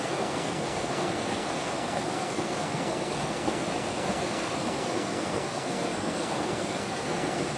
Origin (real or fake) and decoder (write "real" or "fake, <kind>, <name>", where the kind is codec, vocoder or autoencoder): fake, codec, SNAC